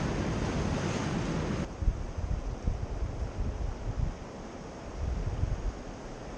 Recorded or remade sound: recorded